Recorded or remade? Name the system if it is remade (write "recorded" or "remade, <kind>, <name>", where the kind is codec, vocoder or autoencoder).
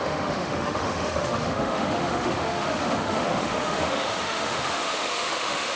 remade, autoencoder, DAC-VAE